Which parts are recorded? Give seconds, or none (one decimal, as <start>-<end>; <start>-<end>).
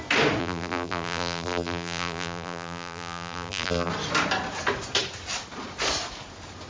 0.0-0.4; 3.9-6.7